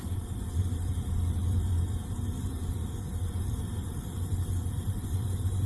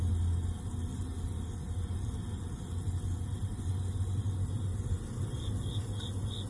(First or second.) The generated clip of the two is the first